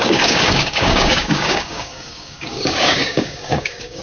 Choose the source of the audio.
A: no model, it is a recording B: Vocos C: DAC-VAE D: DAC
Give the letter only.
D